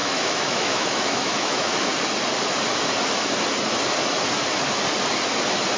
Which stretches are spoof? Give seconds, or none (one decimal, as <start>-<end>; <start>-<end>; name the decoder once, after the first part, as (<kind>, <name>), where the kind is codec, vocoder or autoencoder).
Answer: 0.0-1.9 (autoencoder, DAC-VAE)